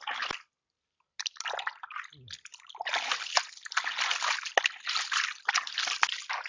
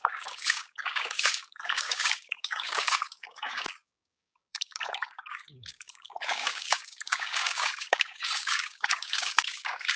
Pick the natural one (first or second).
first